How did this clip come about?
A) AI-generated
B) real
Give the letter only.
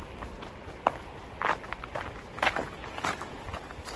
B